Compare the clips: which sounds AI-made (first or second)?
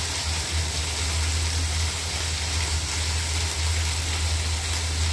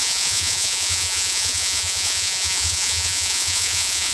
second